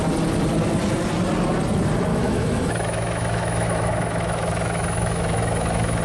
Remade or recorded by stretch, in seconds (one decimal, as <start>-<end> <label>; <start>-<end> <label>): 0.0-2.1 recorded; 2.1-6.0 remade